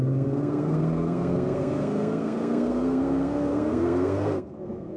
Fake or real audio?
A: fake